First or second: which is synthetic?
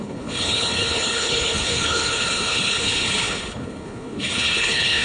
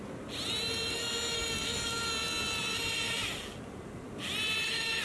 first